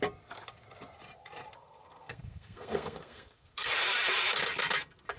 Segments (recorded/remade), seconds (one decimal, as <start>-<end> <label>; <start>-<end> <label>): 0.0-1.6 recorded; 1.6-3.7 remade; 3.7-5.2 recorded